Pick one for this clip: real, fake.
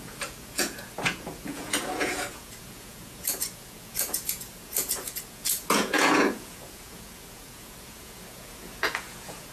fake